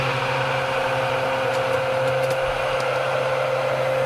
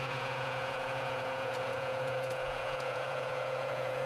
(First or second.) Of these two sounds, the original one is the first